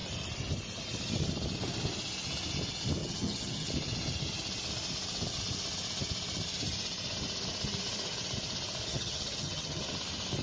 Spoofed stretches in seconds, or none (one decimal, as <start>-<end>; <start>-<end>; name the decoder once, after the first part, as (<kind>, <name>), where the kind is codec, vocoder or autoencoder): 3.0-3.7 (vocoder, HiFi-GAN); 8.9-9.8